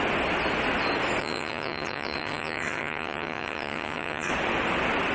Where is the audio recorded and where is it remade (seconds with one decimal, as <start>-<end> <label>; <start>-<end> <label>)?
0.0-1.2 recorded; 1.2-4.3 remade; 4.3-5.1 recorded